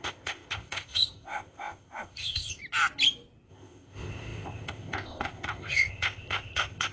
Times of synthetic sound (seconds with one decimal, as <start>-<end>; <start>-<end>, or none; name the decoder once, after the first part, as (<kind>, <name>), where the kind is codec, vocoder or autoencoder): 0.0-2.6 (codec, ZipCodec); 3.5-6.9